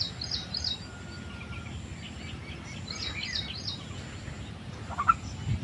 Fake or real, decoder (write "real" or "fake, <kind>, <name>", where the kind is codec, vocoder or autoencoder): real